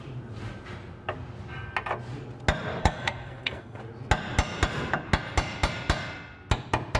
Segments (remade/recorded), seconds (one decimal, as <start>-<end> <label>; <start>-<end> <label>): 0.0-2.8 recorded; 2.8-3.8 remade; 3.8-7.0 recorded